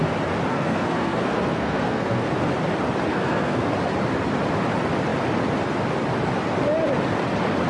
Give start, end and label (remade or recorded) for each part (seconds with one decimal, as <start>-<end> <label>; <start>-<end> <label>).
0.0-0.5 recorded; 0.5-2.3 remade; 2.3-3.1 recorded; 3.1-3.7 remade; 3.7-7.7 recorded